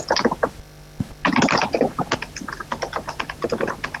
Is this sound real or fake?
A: real